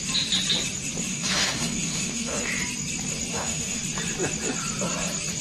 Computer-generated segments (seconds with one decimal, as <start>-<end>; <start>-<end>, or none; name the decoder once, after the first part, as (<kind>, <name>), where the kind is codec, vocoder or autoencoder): 1.1-2.5 (autoencoder, DAC-VAE); 3.3-3.8